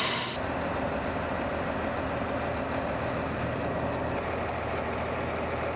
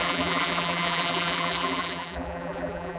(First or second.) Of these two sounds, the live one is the first